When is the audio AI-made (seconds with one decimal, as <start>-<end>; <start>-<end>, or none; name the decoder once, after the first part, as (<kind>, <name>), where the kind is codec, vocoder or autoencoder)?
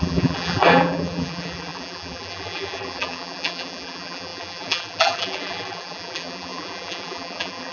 0.0-7.7 (vocoder, BigVGAN v2)